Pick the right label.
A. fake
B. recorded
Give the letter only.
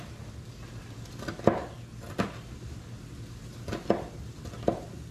B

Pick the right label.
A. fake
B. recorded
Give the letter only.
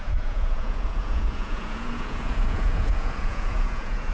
A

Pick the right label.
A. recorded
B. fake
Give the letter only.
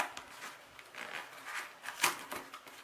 A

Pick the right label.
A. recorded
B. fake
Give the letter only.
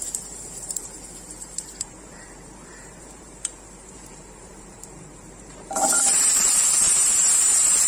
B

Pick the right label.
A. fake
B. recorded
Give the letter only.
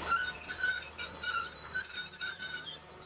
A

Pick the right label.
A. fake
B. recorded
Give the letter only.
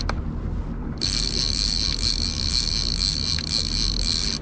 B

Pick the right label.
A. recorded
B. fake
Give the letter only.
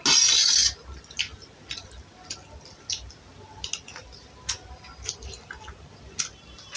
A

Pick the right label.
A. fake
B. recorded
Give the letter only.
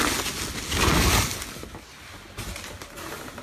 B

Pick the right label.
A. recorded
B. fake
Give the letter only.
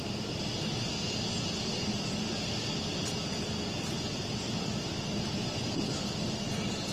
A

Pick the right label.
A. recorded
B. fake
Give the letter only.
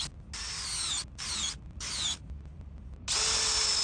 A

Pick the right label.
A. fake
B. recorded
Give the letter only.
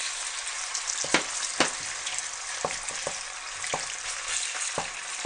B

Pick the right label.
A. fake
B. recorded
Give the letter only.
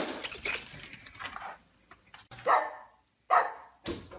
B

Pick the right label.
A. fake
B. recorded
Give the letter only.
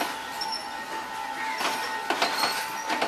B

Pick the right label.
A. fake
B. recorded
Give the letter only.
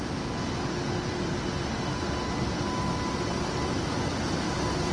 B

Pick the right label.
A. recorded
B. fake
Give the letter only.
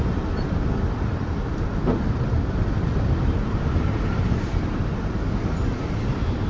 A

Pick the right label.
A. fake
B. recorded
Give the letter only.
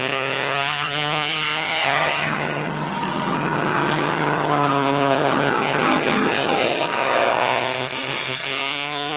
A